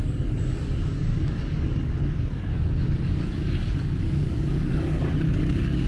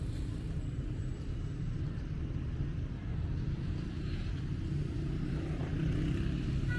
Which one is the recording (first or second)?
second